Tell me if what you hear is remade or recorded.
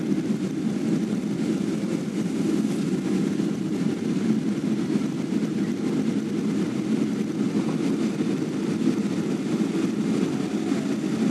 recorded